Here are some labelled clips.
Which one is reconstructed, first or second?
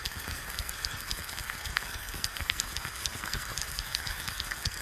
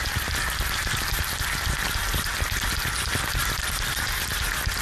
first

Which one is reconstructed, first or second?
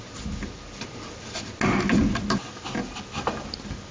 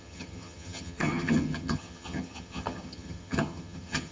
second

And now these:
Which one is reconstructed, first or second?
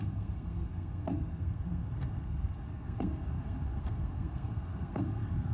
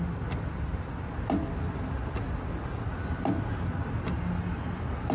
first